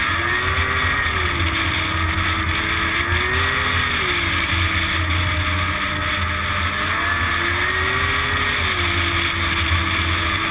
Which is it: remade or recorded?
recorded